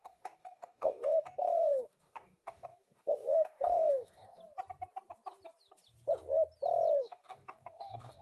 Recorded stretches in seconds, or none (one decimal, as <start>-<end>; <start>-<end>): 4.4-7.0